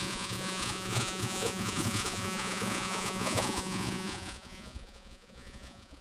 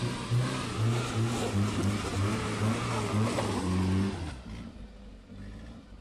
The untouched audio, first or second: second